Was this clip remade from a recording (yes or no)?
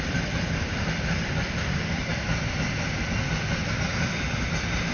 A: no